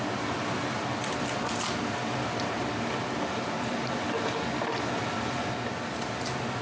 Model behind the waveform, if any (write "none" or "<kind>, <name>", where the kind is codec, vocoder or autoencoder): none